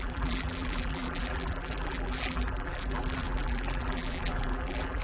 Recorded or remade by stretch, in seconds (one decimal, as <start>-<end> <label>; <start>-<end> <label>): 0.0-5.0 remade